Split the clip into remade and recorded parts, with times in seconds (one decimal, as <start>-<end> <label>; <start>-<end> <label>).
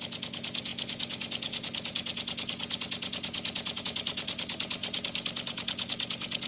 0.0-6.5 recorded